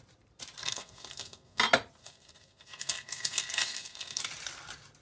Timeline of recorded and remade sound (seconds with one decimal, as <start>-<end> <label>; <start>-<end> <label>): 0.0-0.6 recorded; 0.6-1.6 remade; 1.6-2.0 recorded; 2.0-4.2 remade; 4.2-5.0 recorded